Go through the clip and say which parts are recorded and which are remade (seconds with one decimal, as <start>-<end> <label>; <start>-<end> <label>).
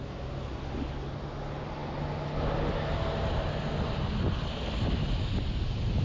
0.0-6.0 recorded